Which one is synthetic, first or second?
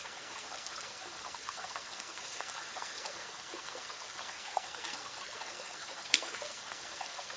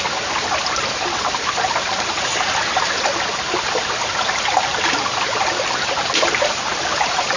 first